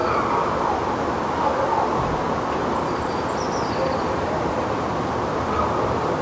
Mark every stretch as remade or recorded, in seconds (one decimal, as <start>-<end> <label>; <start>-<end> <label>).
0.0-6.2 recorded